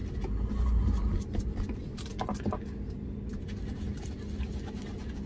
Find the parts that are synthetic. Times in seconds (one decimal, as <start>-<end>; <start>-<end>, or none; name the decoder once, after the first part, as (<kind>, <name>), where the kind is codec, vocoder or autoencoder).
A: none